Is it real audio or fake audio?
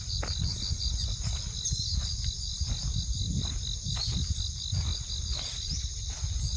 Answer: real